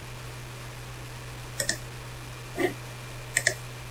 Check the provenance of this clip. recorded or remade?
recorded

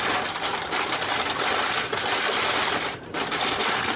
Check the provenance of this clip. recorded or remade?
recorded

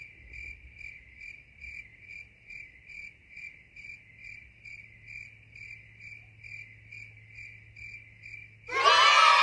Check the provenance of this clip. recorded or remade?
recorded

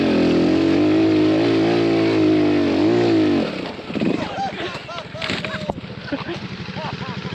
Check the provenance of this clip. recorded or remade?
recorded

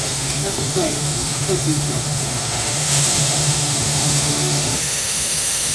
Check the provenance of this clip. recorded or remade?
remade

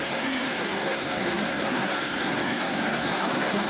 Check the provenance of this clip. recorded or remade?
remade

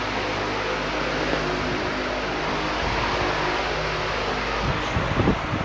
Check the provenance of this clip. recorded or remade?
recorded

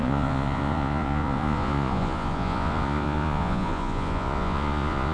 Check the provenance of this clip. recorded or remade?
remade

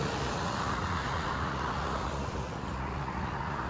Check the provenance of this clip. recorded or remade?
remade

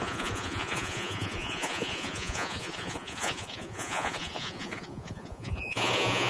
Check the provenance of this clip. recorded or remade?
remade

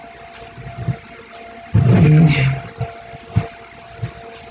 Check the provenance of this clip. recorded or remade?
recorded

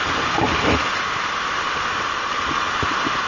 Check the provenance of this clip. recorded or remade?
recorded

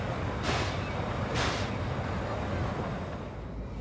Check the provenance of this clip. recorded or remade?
recorded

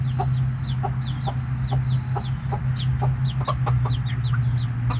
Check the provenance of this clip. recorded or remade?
recorded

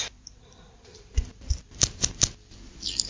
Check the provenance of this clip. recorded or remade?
remade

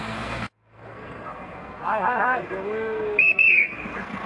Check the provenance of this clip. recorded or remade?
remade